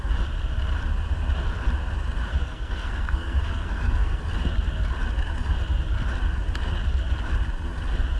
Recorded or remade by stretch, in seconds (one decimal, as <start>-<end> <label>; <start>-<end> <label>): 0.0-2.3 recorded; 2.3-4.2 remade; 4.2-8.2 recorded